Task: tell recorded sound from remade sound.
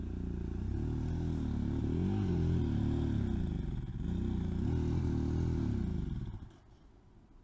recorded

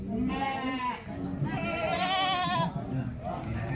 recorded